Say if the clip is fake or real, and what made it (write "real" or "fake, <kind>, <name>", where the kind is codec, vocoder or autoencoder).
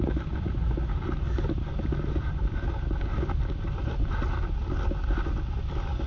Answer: real